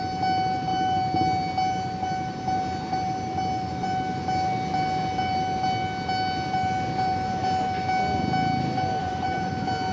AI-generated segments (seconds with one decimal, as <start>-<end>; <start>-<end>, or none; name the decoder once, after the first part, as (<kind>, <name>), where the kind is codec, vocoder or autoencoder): 9.0-9.5 (vocoder, Vocos)